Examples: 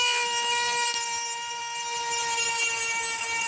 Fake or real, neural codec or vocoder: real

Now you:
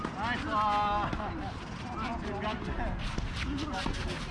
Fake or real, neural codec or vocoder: real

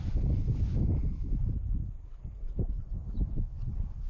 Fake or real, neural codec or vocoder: real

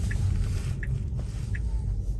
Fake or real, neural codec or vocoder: real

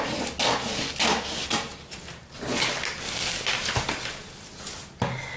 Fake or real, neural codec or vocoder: real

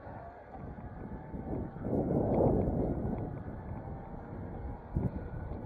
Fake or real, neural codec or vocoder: real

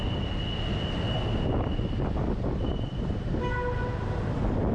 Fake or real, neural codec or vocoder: real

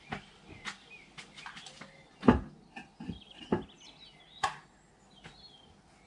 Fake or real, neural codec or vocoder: real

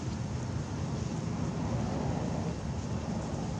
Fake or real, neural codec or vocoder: real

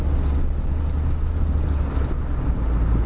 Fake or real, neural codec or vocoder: real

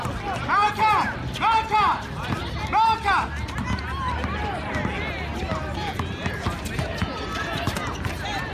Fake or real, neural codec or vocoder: real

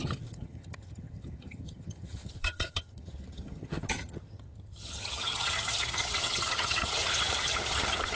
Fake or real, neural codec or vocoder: fake, vocoder, HiFi-GAN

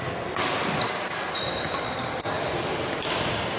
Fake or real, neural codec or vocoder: real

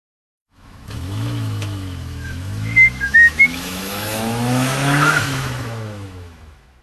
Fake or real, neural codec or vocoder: fake, autoencoder, DAC-VAE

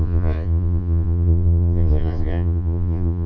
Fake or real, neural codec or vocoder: fake, vocoder, Vocos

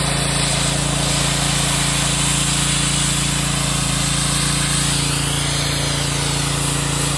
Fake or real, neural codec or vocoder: real